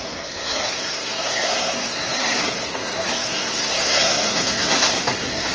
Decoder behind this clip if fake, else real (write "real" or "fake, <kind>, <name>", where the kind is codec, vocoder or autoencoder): fake, codec, SNAC